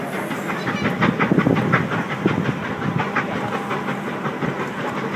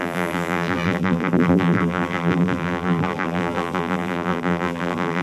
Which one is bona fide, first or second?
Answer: first